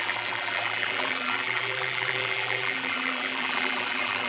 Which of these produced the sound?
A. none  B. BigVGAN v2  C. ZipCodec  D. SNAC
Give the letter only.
B